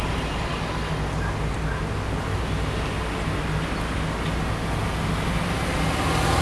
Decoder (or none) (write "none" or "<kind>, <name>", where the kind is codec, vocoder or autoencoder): none